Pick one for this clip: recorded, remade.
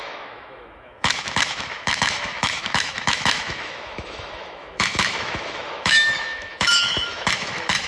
remade